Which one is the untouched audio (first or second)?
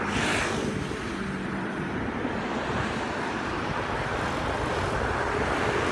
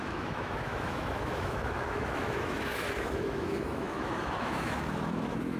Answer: first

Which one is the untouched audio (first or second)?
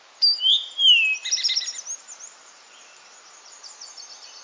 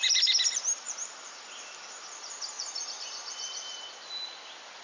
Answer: first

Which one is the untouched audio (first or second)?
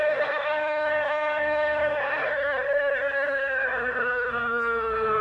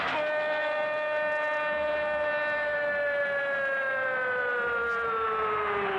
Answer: second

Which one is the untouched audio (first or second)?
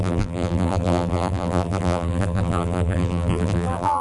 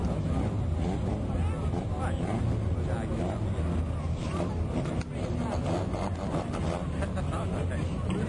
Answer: second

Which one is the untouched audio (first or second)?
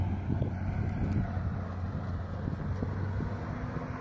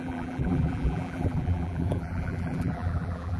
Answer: first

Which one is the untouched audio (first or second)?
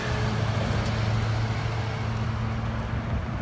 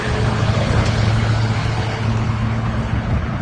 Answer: first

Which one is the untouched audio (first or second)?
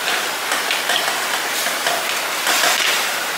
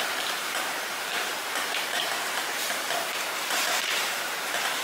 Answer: first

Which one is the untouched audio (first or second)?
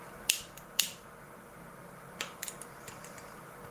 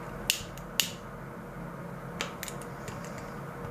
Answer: second